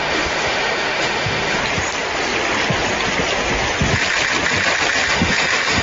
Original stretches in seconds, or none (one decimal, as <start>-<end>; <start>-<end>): 1.6-5.1